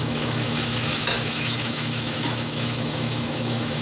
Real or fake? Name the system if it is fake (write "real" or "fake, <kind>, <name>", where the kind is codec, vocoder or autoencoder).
fake, autoencoder, DAC-VAE